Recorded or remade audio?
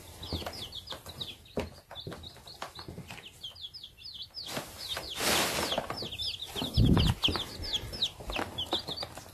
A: recorded